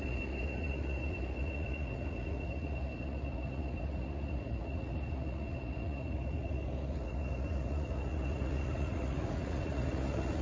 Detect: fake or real fake